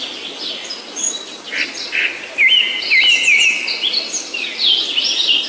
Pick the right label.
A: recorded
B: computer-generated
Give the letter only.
A